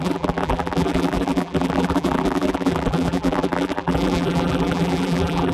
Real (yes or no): no